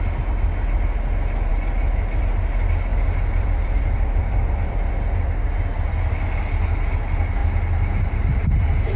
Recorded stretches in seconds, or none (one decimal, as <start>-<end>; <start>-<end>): 0.0-2.9; 4.9-9.0